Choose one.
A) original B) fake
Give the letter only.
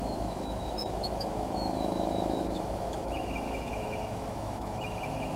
B